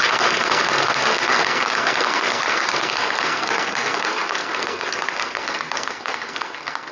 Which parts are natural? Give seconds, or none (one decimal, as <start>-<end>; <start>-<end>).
none